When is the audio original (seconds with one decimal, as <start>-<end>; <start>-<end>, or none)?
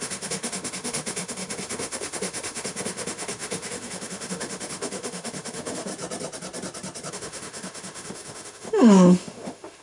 5.9-7.1